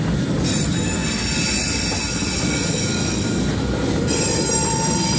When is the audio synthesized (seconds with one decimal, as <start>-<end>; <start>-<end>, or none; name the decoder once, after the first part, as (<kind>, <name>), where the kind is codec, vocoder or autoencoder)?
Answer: 0.0-1.0 (vocoder, BigVGAN v2); 3.9-5.2